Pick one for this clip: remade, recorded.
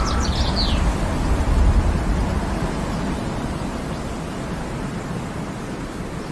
recorded